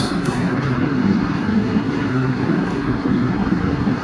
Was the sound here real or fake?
fake